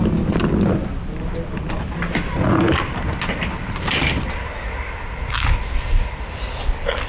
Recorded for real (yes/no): yes